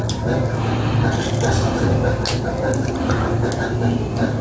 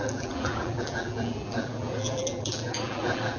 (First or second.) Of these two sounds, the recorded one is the first